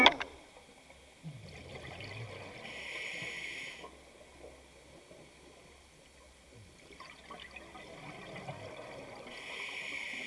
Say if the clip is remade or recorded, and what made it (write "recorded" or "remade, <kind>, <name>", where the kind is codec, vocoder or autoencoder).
recorded